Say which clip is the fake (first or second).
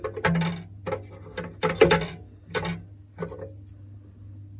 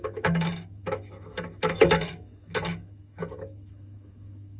second